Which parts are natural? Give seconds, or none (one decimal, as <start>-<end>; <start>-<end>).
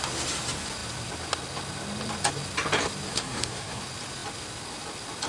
0.0-3.1; 3.8-5.3